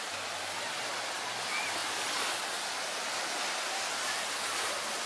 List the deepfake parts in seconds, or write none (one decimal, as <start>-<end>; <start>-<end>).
none